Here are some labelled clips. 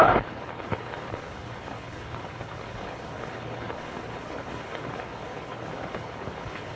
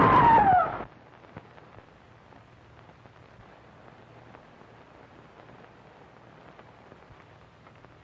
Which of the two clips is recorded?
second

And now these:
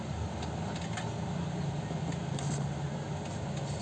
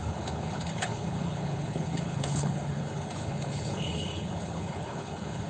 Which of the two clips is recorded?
first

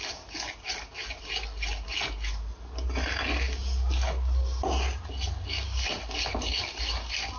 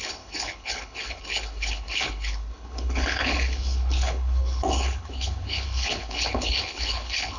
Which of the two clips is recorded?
first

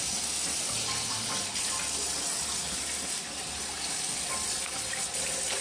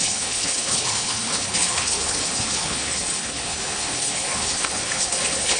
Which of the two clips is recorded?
first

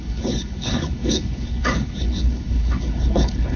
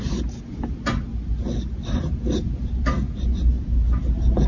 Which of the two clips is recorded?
second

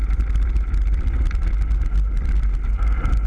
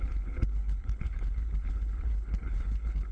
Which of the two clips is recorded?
first